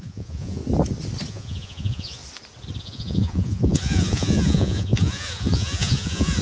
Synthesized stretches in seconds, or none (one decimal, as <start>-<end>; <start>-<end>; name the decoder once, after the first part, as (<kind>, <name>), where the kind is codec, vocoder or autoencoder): 0.0-0.6 (vocoder, Vocos); 1.3-2.2; 2.8-6.4